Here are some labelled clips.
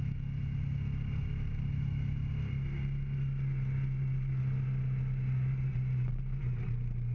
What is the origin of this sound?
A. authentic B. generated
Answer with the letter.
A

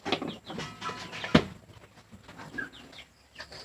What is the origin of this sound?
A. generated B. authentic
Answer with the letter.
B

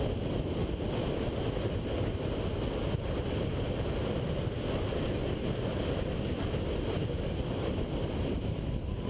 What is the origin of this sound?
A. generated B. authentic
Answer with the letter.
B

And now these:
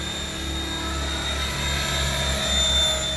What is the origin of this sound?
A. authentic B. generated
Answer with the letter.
A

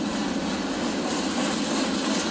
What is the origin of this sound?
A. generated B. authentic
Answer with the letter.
B